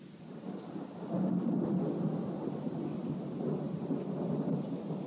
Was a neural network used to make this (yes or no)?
no